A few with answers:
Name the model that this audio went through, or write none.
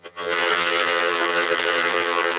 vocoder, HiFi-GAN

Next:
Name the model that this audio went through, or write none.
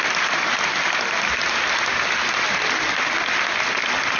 none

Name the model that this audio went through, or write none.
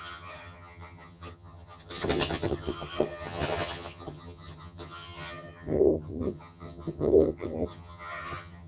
vocoder, HiFi-GAN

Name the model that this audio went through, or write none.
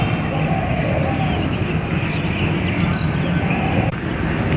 none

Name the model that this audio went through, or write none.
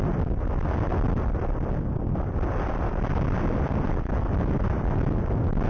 none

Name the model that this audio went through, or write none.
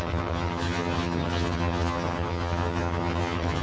vocoder, HiFi-GAN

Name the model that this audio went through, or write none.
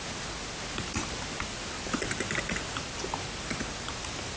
none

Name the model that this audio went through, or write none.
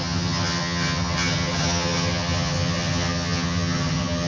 vocoder, HiFi-GAN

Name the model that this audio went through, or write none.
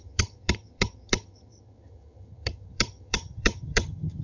vocoder, HiFi-GAN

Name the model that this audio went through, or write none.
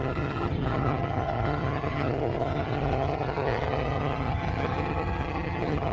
vocoder, HiFi-GAN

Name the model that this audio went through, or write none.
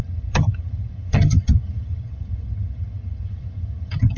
vocoder, HiFi-GAN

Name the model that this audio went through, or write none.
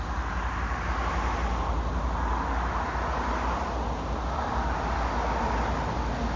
none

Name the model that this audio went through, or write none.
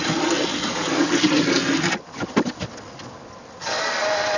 none